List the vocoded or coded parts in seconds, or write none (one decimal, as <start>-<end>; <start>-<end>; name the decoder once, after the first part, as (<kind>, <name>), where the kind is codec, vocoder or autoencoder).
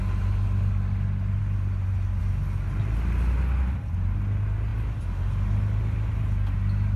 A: none